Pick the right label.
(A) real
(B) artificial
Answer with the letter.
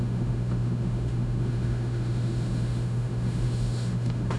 B